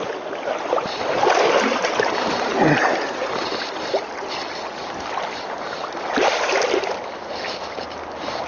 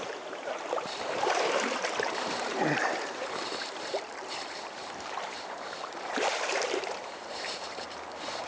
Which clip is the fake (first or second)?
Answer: second